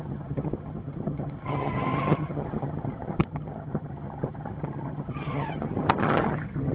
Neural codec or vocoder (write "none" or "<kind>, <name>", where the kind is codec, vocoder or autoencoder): vocoder, HiFi-GAN